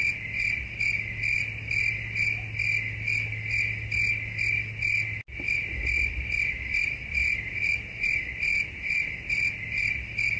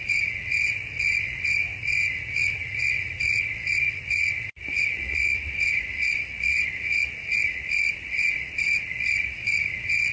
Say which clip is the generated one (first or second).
second